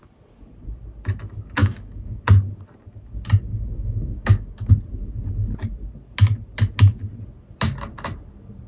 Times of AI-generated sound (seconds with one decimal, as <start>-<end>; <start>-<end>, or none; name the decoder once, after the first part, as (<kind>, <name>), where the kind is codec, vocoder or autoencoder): 1.6-2.2 (codec, DAC); 3.5-4.7